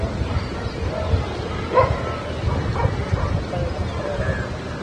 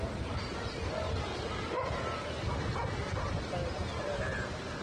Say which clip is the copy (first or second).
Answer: first